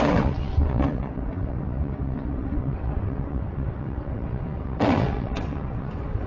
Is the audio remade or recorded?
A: remade